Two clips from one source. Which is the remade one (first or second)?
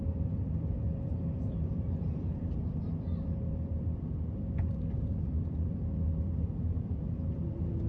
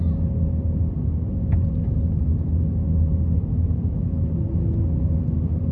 first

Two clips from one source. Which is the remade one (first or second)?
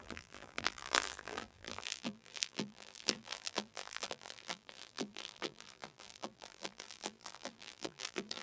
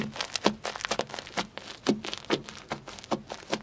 first